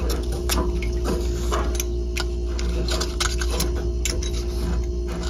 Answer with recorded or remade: recorded